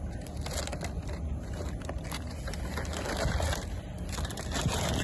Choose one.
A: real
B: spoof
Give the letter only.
A